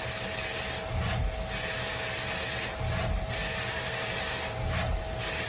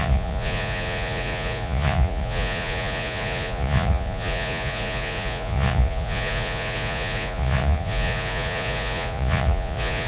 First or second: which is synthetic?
second